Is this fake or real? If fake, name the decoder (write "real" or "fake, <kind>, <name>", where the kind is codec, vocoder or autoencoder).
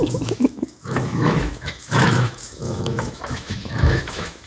fake, autoencoder, DAC-VAE